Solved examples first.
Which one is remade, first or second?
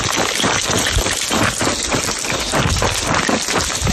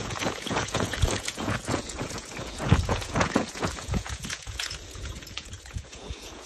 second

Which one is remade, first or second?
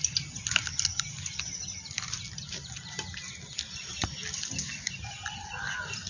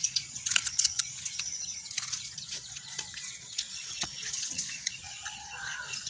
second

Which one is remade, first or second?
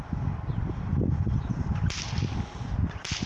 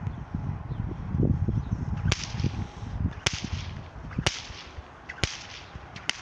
first